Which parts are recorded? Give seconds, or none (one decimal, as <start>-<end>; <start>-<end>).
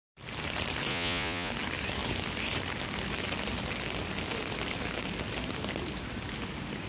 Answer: 0.0-0.9; 1.5-6.9